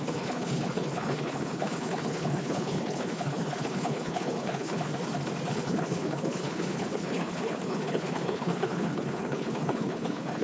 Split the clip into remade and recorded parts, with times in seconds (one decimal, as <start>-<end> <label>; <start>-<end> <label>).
0.0-4.9 remade; 4.9-5.5 recorded; 5.5-10.4 remade